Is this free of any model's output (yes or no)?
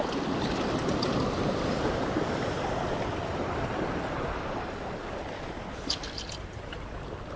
yes